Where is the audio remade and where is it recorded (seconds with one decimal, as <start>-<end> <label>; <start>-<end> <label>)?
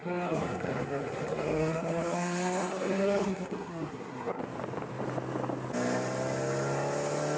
0.0-4.4 remade; 4.4-7.4 recorded